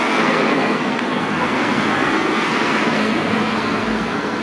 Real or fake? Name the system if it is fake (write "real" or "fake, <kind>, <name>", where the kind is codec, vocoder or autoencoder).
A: fake, codec, SNAC